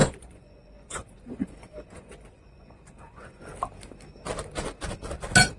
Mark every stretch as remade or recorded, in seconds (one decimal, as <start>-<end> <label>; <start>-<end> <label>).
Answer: 0.0-3.4 remade; 3.4-5.6 recorded